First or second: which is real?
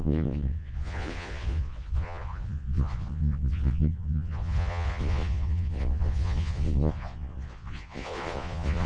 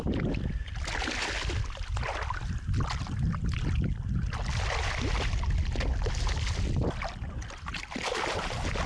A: second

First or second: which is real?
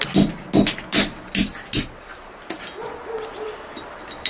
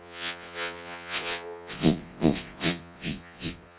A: first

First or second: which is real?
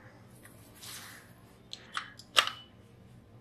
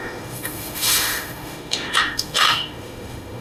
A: first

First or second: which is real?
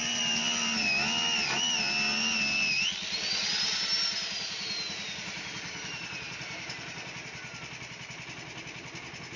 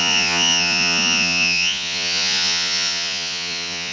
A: first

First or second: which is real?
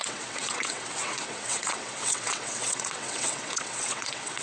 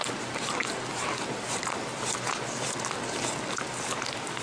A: second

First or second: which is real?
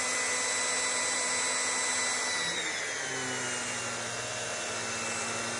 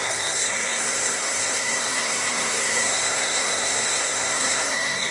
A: first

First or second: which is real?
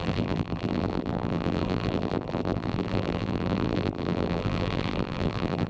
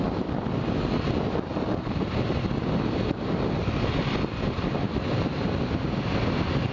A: second